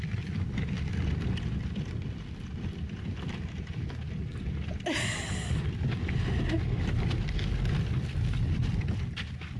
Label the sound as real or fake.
real